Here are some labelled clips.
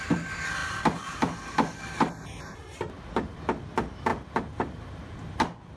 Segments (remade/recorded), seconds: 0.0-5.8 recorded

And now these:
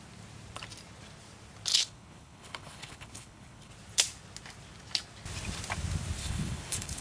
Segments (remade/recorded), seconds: 0.0-1.7 recorded; 1.7-3.7 remade; 3.7-6.2 recorded; 6.2-7.0 remade

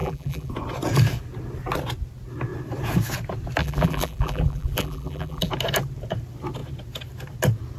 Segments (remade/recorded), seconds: 0.0-0.5 remade; 0.5-3.6 recorded; 3.6-5.5 remade; 5.5-7.8 recorded